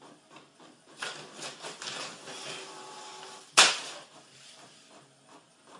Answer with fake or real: fake